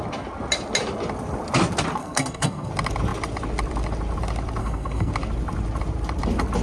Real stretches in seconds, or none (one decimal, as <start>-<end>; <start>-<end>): 0.0-2.0; 2.7-4.6; 5.1-6.6